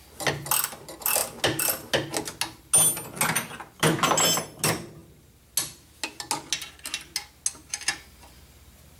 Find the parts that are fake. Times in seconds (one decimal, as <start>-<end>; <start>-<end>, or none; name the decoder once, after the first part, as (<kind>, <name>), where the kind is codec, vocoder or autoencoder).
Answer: none